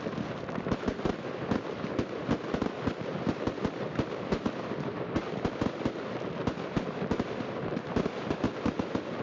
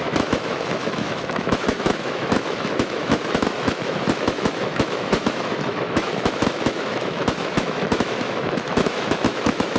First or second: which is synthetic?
second